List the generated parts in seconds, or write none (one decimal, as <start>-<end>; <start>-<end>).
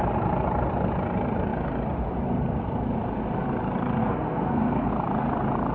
4.0-4.9